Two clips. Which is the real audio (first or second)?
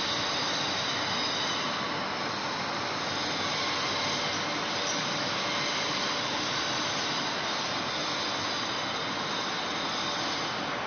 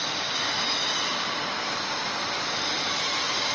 first